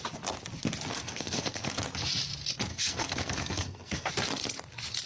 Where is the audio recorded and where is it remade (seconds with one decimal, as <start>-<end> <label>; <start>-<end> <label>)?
0.0-0.9 recorded; 0.9-1.8 remade; 1.8-2.7 recorded; 2.7-4.1 remade; 4.1-5.1 recorded